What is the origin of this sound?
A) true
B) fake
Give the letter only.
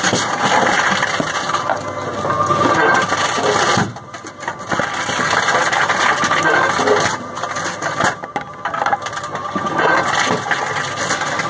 A